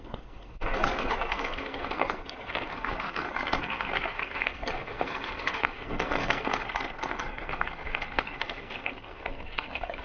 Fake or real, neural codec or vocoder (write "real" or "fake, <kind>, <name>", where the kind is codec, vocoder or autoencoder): fake, codec, SNAC